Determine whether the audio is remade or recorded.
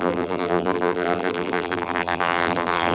remade